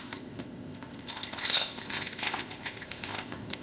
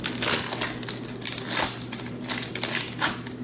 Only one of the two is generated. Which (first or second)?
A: first